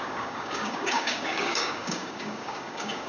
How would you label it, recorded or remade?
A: remade